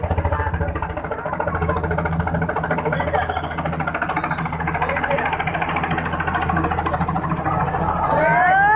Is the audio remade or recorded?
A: recorded